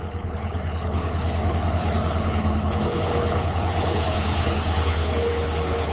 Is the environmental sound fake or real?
fake